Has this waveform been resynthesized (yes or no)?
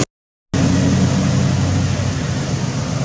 no